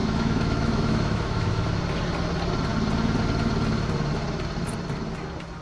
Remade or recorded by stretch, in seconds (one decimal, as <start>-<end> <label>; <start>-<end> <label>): 0.0-1.8 remade; 1.8-5.6 recorded